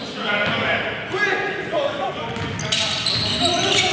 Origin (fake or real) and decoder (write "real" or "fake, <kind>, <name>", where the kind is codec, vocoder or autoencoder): real